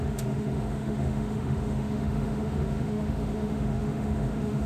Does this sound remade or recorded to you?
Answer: remade